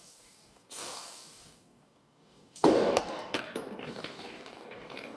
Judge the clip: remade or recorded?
remade